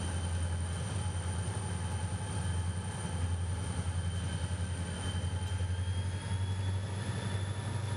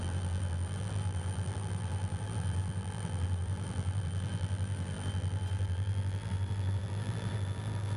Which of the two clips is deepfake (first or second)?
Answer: second